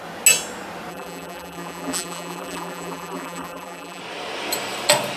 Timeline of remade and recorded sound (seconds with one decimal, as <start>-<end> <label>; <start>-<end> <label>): 0.0-0.9 recorded; 0.9-4.0 remade; 4.0-5.2 recorded